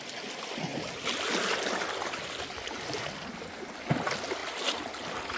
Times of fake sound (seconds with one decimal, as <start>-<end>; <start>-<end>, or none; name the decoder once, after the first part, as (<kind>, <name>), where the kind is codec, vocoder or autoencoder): none